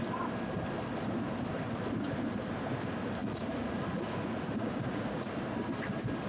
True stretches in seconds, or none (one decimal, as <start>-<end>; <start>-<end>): 0.0-3.2; 5.3-6.3

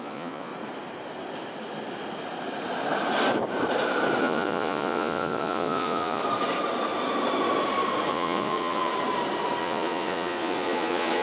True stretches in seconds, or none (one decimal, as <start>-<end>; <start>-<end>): 0.5-4.2; 6.2-8.1; 8.9-9.6

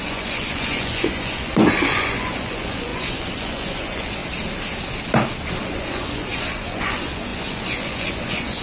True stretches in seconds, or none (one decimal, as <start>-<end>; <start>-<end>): 4.2-5.6

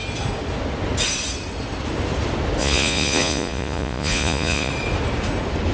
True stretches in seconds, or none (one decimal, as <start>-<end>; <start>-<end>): 0.0-2.6; 4.7-5.7

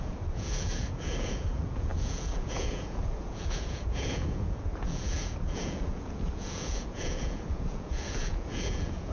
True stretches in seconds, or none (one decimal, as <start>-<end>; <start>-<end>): none

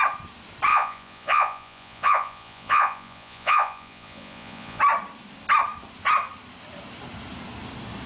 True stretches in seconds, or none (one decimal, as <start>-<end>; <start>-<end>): 0.0-0.7; 4.8-8.1

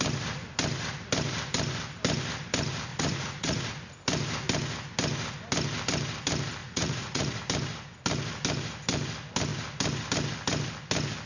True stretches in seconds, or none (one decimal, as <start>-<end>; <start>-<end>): 0.0-2.9; 3.7-6.6; 7.4-11.3

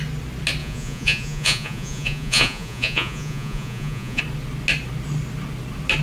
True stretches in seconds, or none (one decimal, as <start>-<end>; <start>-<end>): 0.0-0.6; 4.2-6.0